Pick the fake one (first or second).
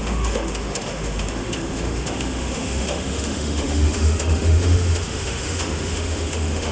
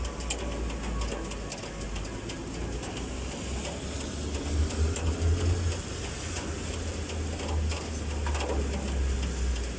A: first